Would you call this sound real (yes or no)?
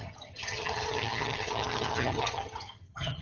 no